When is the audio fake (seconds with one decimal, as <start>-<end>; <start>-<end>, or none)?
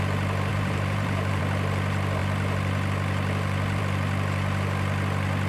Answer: 0.5-1.4